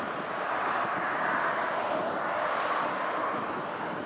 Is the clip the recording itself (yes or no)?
yes